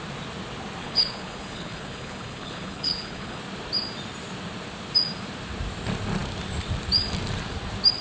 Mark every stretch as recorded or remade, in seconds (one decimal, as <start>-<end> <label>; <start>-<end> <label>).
0.0-0.8 recorded; 0.8-3.4 remade; 3.4-8.0 recorded